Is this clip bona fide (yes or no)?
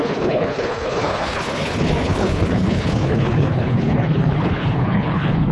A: no